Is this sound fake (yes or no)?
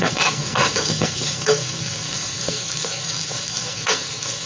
yes